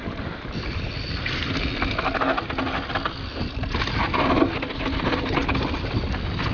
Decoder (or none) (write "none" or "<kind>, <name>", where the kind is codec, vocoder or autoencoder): none